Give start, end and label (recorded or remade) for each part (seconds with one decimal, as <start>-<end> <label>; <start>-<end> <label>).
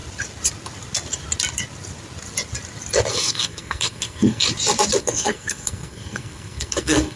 0.0-3.1 recorded; 3.1-4.4 remade; 4.4-5.0 recorded; 5.0-7.2 remade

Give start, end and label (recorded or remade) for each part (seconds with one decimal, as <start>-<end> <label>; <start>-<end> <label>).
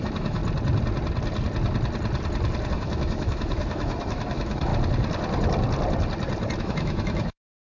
0.0-0.4 remade; 0.4-2.7 recorded; 2.7-4.7 remade; 4.7-6.6 recorded; 6.6-7.7 remade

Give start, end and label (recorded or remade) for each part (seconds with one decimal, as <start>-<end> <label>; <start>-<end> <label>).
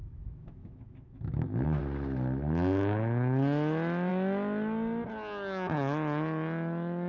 0.0-1.8 remade; 1.8-7.1 recorded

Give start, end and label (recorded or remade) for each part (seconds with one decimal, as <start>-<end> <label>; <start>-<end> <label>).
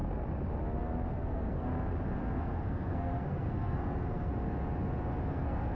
0.0-1.1 recorded; 1.1-1.7 remade; 1.7-2.4 recorded; 2.4-4.3 remade; 4.3-5.3 recorded; 5.3-5.7 remade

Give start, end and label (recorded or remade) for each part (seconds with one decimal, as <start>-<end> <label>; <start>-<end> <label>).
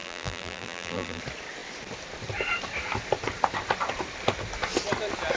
0.0-1.2 remade; 1.2-5.4 recorded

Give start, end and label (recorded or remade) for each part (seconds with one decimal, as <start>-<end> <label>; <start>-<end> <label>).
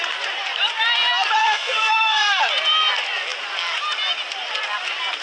0.0-1.4 recorded; 1.4-2.4 remade; 2.4-5.2 recorded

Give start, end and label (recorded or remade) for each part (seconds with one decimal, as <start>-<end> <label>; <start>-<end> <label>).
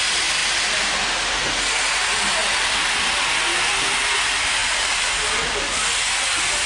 0.0-4.6 recorded; 4.6-5.7 remade; 5.7-6.7 recorded